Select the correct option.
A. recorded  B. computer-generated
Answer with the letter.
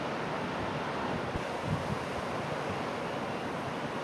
A